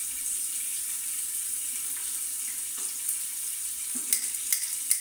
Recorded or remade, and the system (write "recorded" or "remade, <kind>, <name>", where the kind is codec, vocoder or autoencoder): remade, vocoder, BigVGAN v2